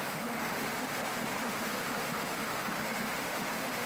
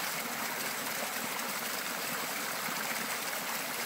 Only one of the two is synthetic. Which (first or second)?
first